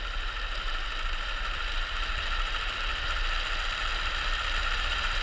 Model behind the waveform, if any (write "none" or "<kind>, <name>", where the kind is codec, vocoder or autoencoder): vocoder, BigVGAN v2